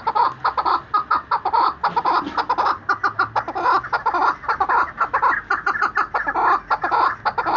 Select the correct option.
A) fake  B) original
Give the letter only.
B